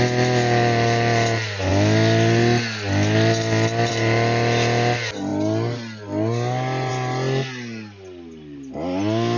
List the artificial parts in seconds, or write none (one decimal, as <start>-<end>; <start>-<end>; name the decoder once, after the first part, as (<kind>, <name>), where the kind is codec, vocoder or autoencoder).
none